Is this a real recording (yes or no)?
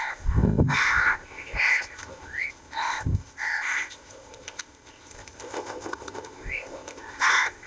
no